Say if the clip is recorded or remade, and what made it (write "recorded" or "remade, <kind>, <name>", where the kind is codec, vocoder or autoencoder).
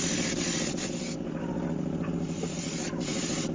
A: recorded